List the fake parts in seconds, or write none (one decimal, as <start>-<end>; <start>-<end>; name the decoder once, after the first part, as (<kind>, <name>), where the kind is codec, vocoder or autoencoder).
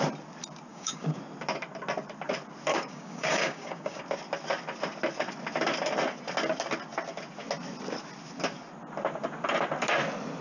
0.7-1.2 (codec, DAC); 2.7-4.0